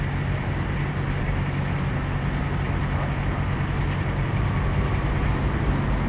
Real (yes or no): yes